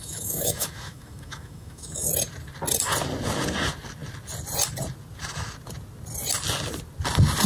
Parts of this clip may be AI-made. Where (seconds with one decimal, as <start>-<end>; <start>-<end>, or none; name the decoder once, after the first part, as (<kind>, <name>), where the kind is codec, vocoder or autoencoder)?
0.0-2.1 (autoencoder, DAC-VAE)